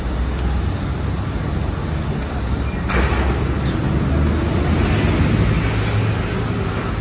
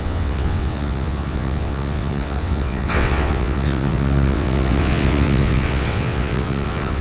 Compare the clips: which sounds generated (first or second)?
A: second